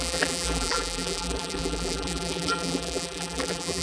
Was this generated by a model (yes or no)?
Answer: yes